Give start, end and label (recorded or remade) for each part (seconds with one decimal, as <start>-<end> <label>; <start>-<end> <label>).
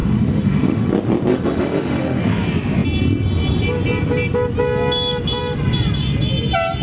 0.0-0.9 remade; 0.9-1.3 recorded; 1.3-2.2 remade; 2.2-6.8 recorded